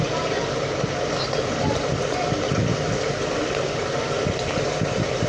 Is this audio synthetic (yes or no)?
no